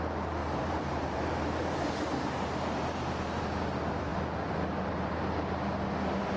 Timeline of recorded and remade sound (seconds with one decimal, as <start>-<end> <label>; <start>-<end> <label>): 0.0-0.4 recorded; 0.4-3.4 remade; 3.4-6.4 recorded

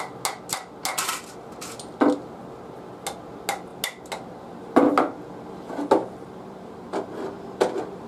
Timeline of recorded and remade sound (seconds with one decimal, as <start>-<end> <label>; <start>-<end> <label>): 0.0-6.0 recorded; 6.0-7.2 remade; 7.2-8.1 recorded

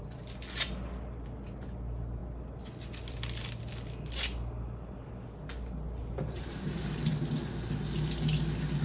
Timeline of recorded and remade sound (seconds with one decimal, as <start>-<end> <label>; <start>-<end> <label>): 0.0-6.0 recorded; 6.0-7.1 remade; 7.1-8.8 recorded

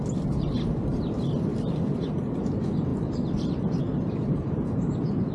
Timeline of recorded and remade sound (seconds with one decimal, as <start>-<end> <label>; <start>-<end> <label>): 0.0-5.3 recorded

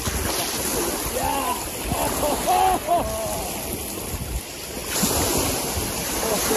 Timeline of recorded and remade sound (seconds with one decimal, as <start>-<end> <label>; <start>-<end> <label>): 0.0-6.6 recorded